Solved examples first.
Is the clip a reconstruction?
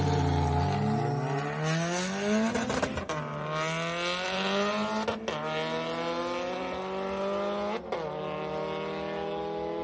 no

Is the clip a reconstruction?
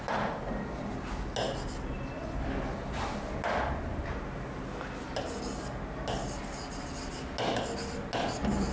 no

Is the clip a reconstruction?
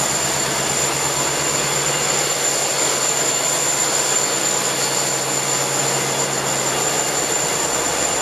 no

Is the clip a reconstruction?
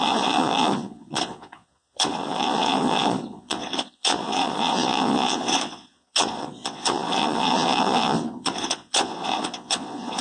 yes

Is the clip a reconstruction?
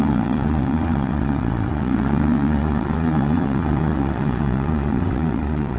yes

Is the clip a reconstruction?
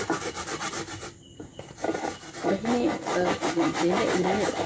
no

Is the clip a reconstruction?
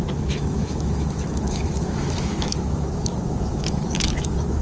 yes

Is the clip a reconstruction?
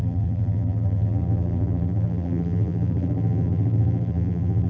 yes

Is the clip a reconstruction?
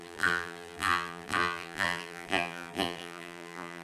yes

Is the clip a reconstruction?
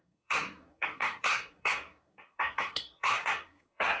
yes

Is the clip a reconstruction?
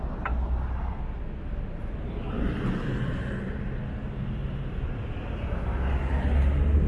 no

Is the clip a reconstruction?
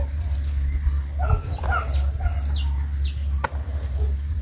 no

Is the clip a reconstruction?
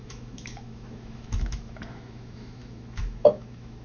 yes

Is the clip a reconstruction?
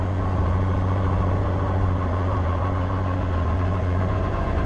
yes